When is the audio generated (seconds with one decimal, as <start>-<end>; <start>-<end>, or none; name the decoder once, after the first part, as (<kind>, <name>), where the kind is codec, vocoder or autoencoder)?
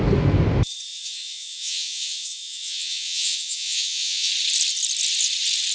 0.9-4.3 (vocoder, Vocos)